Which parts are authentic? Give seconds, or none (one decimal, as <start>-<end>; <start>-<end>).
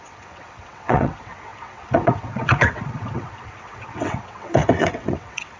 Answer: none